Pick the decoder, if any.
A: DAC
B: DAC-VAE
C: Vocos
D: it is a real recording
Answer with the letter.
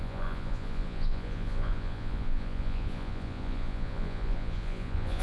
C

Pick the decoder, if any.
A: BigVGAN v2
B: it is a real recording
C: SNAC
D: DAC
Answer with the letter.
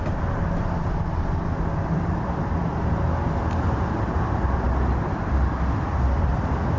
A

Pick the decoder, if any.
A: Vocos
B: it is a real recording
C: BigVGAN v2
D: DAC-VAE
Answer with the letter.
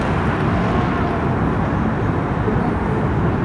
B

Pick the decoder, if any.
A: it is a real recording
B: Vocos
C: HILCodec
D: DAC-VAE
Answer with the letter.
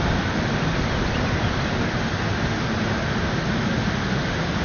A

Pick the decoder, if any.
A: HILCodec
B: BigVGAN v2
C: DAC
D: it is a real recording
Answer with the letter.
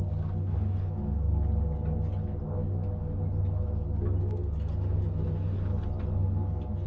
D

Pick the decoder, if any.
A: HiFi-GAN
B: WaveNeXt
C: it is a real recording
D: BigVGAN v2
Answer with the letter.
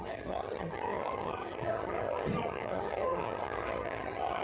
A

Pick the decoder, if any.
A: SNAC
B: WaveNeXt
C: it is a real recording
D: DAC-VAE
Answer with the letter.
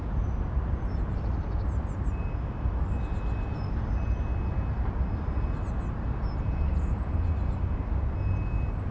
C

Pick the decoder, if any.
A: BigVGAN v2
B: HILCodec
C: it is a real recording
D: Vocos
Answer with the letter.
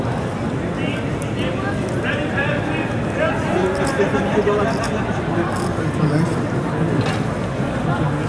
C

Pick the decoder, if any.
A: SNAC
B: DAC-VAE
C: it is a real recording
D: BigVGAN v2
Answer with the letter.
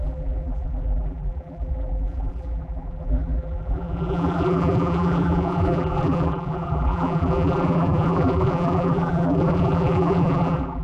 D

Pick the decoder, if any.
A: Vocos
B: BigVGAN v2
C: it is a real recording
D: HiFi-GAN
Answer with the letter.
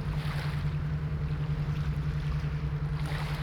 C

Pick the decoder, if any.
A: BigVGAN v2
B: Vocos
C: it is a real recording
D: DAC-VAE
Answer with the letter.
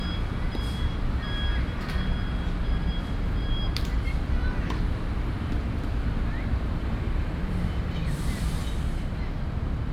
A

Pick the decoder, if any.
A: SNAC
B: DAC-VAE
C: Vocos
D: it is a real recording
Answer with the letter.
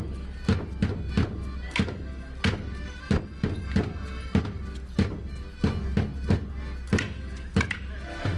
D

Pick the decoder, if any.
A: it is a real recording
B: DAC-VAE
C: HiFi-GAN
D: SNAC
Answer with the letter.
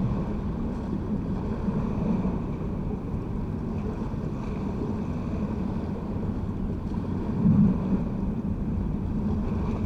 A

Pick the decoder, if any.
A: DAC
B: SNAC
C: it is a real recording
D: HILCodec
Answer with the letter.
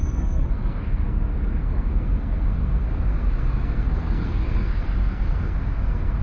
B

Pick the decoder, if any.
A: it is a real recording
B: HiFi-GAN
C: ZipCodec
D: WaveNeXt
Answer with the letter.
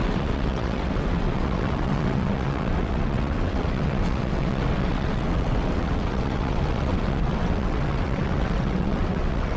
D